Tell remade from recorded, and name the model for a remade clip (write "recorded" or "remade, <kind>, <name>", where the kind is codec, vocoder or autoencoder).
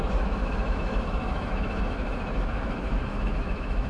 remade, autoencoder, DAC-VAE